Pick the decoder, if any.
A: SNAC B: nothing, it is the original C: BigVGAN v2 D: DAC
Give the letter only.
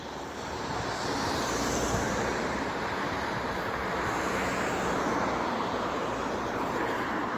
C